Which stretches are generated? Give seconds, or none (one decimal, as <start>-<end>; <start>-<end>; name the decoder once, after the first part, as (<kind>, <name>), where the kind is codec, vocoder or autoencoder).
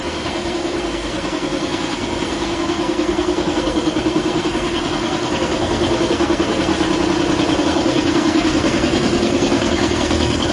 0.0-6.7 (codec, SNAC); 7.6-10.5